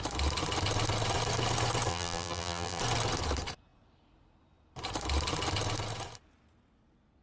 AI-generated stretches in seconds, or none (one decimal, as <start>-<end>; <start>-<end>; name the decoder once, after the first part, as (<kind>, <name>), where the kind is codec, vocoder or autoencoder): 1.9-2.8 (vocoder, BigVGAN v2)